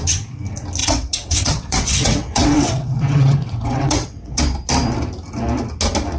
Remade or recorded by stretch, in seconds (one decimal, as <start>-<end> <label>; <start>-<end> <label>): 0.0-0.8 recorded; 0.8-4.4 remade; 4.4-6.2 recorded